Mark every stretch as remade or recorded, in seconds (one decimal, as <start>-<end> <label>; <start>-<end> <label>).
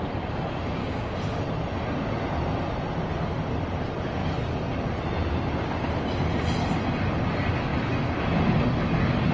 0.0-0.8 recorded; 0.8-1.4 remade; 1.4-9.3 recorded